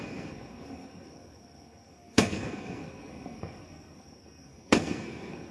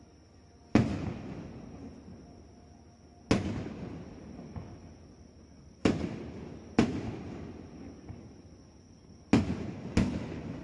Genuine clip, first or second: second